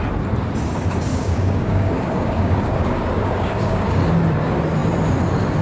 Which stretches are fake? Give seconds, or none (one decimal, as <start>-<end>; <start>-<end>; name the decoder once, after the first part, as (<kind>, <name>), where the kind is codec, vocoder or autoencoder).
1.1-4.0 (codec, DAC)